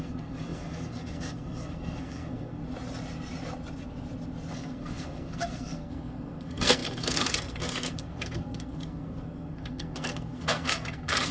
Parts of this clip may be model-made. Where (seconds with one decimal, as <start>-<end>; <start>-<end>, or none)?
0.0-2.6; 4.5-11.3